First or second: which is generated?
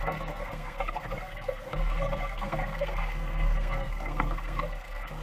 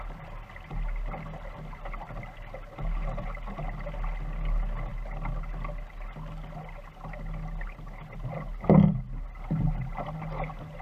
first